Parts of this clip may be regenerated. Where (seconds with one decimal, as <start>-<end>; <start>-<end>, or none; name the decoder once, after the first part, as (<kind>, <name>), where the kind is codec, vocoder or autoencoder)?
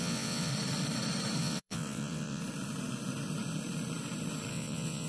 0.0-0.5 (vocoder, WaveNeXt); 1.4-2.4; 4.5-5.1